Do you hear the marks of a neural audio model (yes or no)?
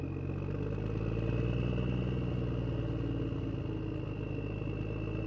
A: no